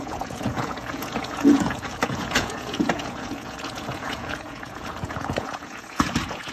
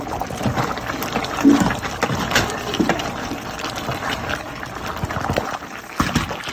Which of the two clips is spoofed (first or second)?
first